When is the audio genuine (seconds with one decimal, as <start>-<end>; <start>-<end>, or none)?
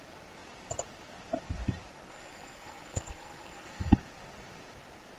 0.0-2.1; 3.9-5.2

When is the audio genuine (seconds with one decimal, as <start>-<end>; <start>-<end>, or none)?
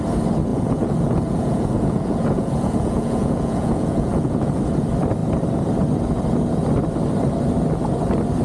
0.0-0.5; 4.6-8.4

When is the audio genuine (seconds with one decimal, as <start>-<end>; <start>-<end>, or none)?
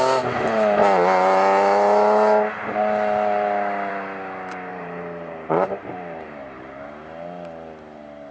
0.0-4.7; 6.7-8.3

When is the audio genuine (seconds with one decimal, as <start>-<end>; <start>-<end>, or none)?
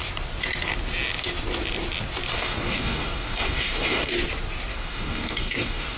0.0-2.3; 4.1-4.7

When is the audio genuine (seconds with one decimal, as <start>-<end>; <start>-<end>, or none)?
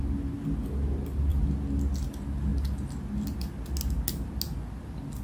0.0-5.2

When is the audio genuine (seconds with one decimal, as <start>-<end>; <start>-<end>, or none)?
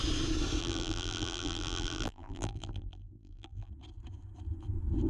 0.0-0.6; 3.7-5.1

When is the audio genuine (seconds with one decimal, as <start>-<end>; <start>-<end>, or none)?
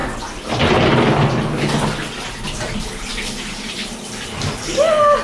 0.0-3.1; 4.1-5.2